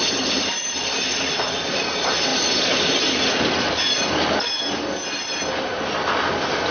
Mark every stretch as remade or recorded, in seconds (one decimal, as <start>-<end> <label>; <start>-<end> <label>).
0.0-6.7 recorded